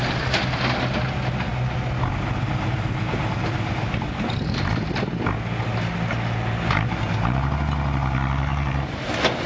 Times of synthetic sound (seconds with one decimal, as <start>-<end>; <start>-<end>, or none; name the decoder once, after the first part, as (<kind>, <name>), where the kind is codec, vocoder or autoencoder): 8.5-9.1 (vocoder, BigVGAN v2)